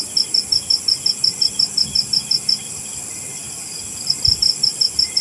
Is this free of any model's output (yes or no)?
yes